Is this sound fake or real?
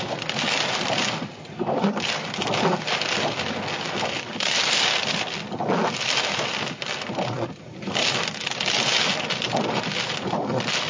real